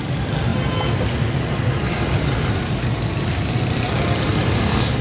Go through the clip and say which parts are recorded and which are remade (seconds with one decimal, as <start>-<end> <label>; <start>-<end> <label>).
0.0-5.0 recorded